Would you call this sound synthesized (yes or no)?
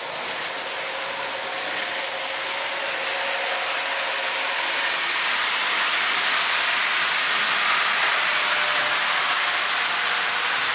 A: no